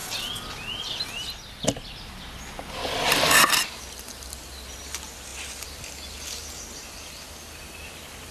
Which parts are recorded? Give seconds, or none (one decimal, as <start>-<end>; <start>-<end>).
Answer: 0.0-8.3